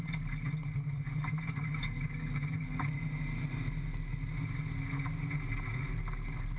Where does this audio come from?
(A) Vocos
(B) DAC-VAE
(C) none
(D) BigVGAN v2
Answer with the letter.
C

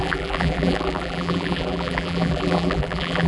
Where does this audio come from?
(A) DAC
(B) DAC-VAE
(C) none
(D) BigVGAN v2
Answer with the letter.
D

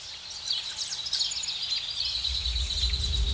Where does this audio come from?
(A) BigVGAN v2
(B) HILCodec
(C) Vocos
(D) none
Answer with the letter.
D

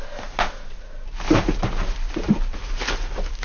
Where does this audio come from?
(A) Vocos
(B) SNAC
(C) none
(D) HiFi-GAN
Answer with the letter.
C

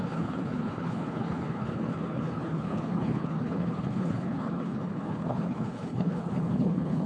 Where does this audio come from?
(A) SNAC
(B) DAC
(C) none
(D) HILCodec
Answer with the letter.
D